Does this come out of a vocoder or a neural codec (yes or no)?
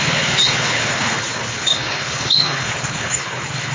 yes